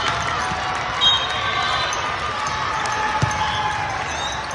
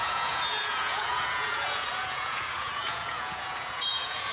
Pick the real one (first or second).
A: first